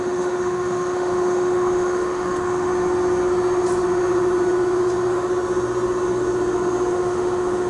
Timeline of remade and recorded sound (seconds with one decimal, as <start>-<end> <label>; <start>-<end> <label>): 0.0-2.7 remade; 2.7-6.9 recorded; 6.9-7.7 remade